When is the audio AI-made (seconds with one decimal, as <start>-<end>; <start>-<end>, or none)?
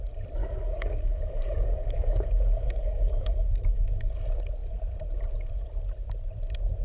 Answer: 0.4-4.1